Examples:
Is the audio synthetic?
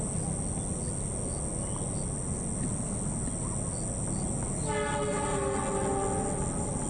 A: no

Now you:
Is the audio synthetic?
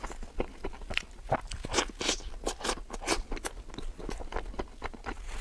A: no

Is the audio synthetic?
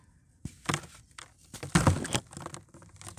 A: no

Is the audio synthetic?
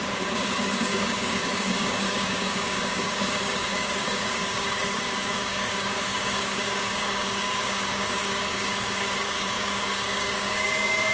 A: yes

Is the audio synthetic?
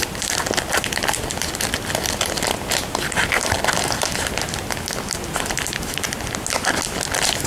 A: no